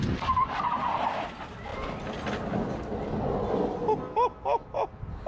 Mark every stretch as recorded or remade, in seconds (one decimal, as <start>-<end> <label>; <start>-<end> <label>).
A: 0.0-5.3 recorded